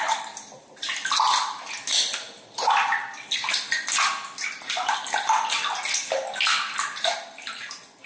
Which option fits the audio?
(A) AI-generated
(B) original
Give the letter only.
B